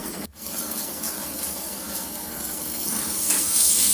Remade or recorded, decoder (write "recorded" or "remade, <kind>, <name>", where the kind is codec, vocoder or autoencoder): remade, codec, SNAC